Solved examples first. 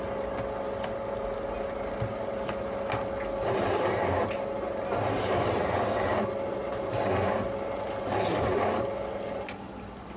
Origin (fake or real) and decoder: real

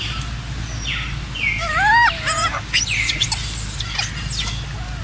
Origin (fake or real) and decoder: real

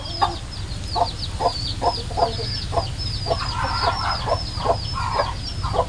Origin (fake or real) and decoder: real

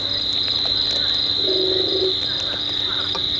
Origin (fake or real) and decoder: real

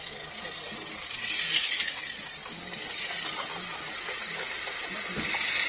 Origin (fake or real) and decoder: real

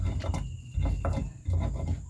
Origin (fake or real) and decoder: real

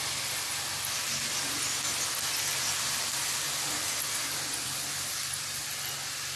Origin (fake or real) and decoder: real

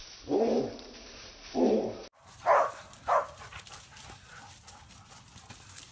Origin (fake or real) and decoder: real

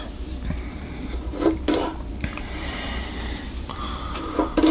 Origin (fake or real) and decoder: fake, vocoder, BigVGAN v2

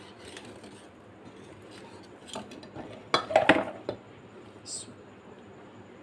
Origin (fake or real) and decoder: real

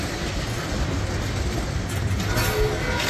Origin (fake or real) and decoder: real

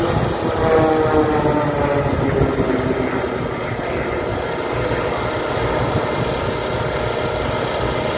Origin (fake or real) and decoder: real